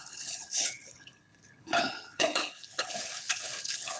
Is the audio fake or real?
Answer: fake